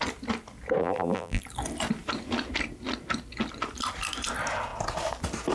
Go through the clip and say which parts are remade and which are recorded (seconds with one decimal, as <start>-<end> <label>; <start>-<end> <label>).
0.0-0.8 recorded; 0.8-1.4 remade; 1.4-5.5 recorded